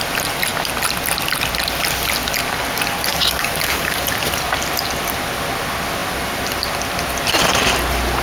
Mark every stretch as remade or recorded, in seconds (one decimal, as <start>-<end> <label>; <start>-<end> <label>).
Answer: 0.0-3.1 recorded; 3.1-4.0 remade; 4.0-8.2 recorded